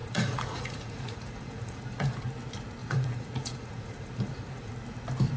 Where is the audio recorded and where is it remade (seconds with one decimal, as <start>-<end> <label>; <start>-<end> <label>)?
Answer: 0.0-2.2 remade; 2.2-2.8 recorded; 2.8-4.7 remade; 4.7-5.4 recorded